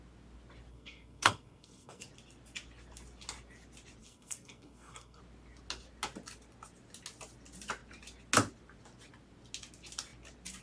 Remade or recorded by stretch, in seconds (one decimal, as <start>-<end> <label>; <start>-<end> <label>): 0.0-0.7 recorded; 0.7-2.1 remade; 2.1-4.0 recorded; 4.0-5.2 remade; 5.2-10.6 recorded